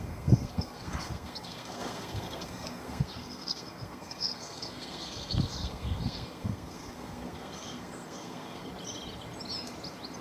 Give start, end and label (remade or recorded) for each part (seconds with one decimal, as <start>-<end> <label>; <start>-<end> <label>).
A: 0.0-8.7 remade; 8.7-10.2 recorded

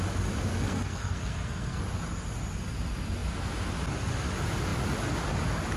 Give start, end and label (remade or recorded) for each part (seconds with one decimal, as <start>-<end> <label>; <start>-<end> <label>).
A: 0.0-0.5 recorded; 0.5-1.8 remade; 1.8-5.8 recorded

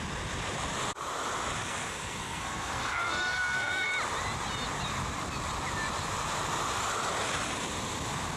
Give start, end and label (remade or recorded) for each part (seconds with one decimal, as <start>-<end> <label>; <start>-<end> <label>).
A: 0.0-1.6 recorded; 1.6-3.9 remade; 3.9-8.4 recorded

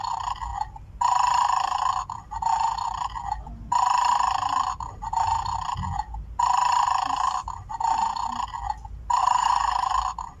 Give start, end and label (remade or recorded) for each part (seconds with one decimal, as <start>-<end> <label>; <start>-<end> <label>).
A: 0.0-9.2 recorded; 9.2-9.9 remade; 9.9-10.4 recorded

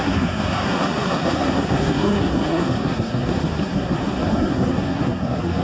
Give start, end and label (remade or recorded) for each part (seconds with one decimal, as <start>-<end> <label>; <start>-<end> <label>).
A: 0.0-5.6 remade

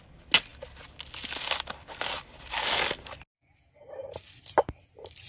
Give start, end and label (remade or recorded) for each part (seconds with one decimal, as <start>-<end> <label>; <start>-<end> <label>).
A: 0.0-5.3 recorded